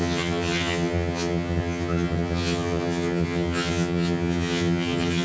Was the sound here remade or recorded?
remade